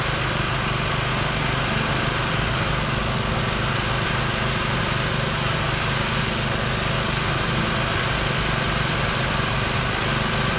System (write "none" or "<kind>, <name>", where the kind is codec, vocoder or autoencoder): none